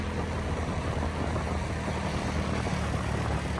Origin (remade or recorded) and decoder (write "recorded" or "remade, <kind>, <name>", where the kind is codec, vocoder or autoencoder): recorded